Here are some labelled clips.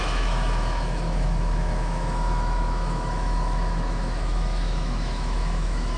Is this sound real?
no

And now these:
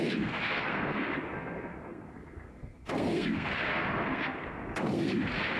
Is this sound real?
no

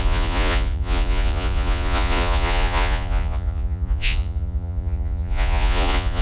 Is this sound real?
no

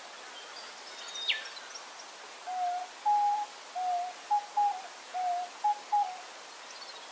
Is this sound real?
yes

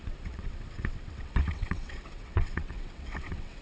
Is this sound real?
no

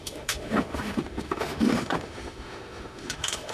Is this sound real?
no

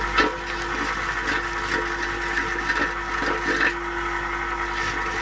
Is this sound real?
yes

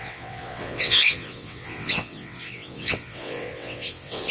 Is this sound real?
no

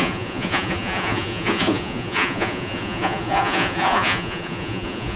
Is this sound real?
no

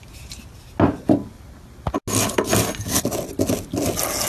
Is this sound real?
yes